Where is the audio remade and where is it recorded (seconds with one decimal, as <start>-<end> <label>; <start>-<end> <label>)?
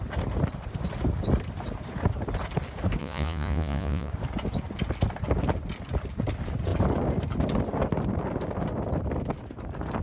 0.0-3.0 recorded; 3.0-4.1 remade; 4.1-10.0 recorded